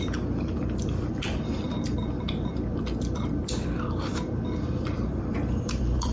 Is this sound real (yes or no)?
no